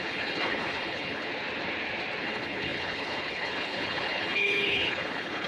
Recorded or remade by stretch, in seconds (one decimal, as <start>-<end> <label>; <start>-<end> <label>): 0.0-1.3 remade; 1.3-2.2 recorded; 2.2-5.5 remade